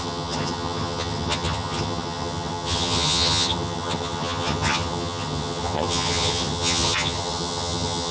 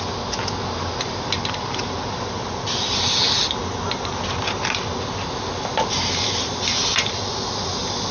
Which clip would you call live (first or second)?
second